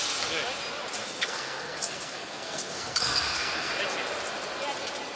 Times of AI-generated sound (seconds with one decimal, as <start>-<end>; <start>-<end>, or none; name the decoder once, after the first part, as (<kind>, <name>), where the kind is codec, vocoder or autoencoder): 1.0-3.7 (codec, SNAC)